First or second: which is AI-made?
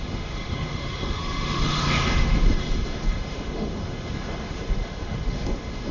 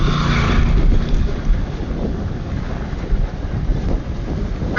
first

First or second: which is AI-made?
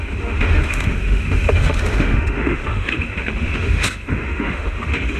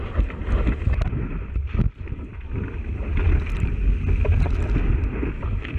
first